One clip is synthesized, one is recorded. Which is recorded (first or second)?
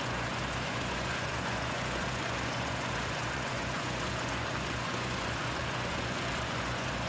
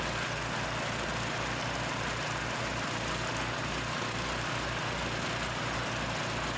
second